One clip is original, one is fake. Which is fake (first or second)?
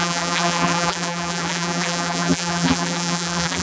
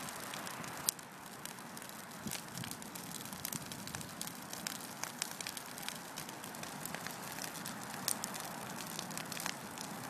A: first